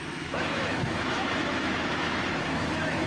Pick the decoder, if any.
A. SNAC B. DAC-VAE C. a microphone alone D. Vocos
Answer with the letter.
B